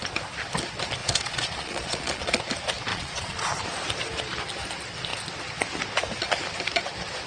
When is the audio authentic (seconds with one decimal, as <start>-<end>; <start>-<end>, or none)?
0.0-1.0; 2.4-2.9; 3.5-7.3